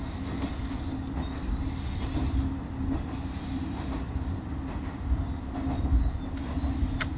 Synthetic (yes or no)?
no